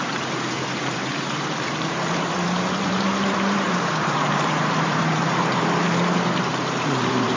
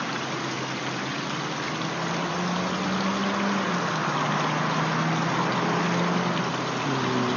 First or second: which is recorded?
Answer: second